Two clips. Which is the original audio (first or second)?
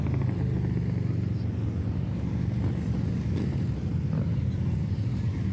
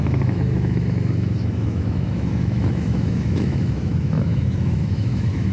first